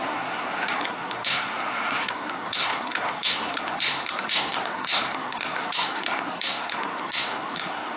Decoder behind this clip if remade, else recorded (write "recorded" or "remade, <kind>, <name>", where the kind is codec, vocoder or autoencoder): remade, codec, SNAC